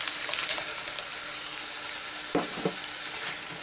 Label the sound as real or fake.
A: real